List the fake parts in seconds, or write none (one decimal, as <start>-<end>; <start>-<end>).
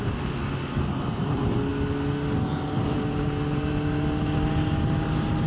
none